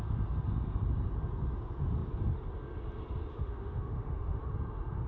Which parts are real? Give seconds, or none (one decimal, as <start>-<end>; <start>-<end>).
0.0-3.3; 4.4-5.1